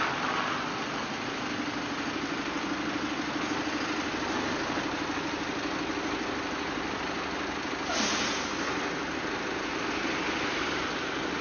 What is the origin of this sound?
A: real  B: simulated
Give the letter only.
A